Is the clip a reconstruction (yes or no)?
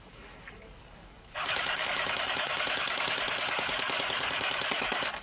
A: yes